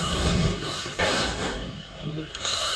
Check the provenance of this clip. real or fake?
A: fake